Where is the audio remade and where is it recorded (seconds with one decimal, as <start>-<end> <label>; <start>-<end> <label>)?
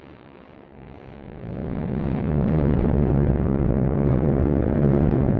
0.0-5.4 remade